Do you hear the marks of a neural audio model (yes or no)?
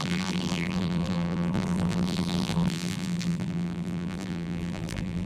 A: yes